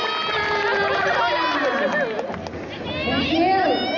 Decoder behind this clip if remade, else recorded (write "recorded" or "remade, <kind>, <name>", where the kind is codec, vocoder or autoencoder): recorded